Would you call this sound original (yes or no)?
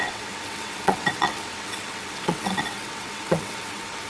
no